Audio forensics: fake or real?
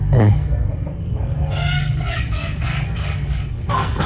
fake